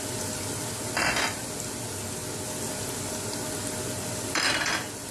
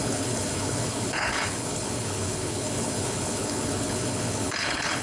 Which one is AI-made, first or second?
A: second